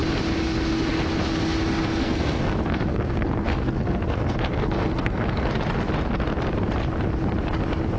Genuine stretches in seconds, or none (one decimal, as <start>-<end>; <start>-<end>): 0.0-2.0; 5.5-8.0